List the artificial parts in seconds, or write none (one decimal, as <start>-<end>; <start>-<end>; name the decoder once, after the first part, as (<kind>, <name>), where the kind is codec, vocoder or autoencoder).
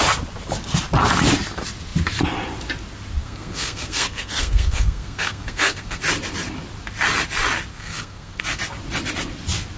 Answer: 3.2-6.0 (codec, SNAC); 7.7-8.4